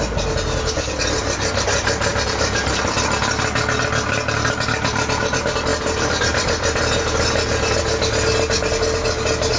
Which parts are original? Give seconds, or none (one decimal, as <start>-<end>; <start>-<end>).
0.0-2.1; 3.0-5.7; 7.8-9.6